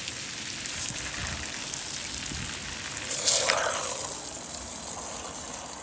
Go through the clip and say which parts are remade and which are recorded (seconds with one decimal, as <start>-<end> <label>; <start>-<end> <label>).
0.0-5.8 recorded